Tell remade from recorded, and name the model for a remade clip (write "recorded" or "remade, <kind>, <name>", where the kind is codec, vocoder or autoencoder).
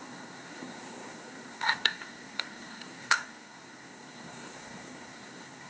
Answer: remade, codec, SNAC